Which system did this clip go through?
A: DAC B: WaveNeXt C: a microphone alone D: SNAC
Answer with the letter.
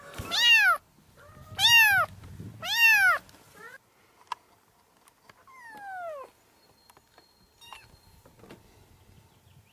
C